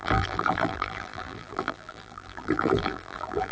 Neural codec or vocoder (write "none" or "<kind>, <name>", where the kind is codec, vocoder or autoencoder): vocoder, BigVGAN v2